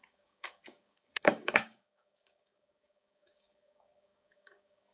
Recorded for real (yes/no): no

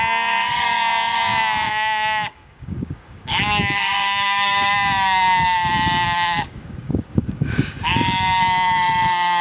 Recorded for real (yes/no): no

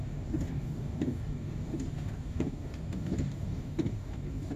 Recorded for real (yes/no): no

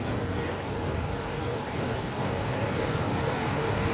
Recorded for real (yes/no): no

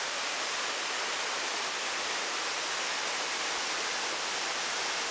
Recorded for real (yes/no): yes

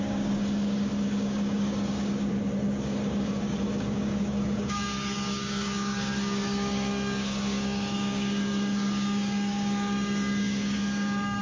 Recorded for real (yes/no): no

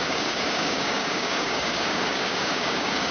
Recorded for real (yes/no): no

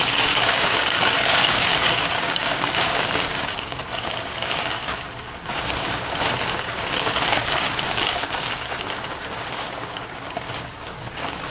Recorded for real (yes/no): no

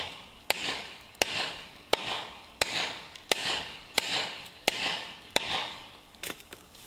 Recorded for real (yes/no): no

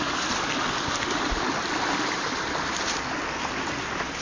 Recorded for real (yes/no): yes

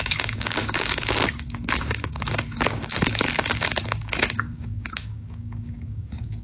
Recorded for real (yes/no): no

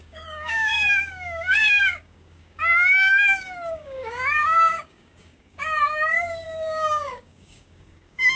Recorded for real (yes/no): no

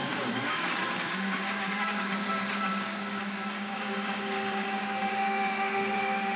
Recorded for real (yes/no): no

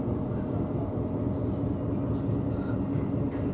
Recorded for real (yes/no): yes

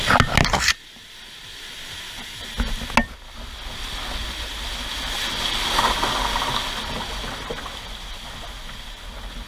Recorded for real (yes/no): yes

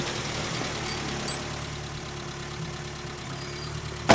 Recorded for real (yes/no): yes